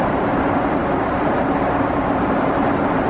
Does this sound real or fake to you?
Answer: fake